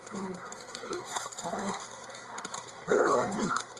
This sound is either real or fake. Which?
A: fake